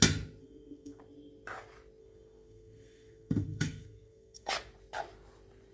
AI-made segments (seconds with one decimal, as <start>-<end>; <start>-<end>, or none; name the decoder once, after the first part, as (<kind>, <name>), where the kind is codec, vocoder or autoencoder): 0.4-1.0 (codec, SNAC); 2.0-4.5